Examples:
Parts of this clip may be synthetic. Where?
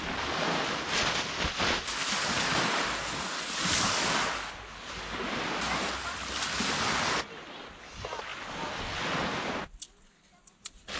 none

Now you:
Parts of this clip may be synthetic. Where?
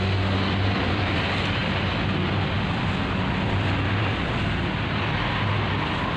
none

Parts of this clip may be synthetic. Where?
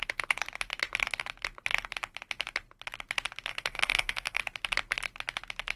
3.5-4.4 (codec, SNAC)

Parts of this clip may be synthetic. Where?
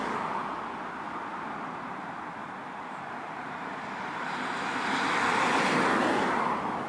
2.4-4.7 (vocoder, BigVGAN v2)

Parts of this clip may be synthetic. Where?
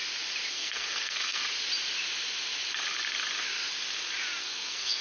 0.5-1.4 (codec, SNAC); 4.4-5.0